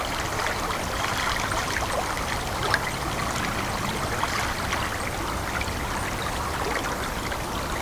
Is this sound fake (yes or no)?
no